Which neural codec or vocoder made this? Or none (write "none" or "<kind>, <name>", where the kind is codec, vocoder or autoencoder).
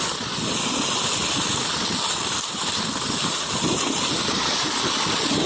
none